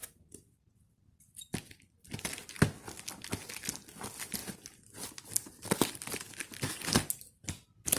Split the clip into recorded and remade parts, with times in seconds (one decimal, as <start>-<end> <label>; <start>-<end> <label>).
0.0-2.1 remade; 2.1-4.4 recorded; 4.4-5.6 remade; 5.6-8.0 recorded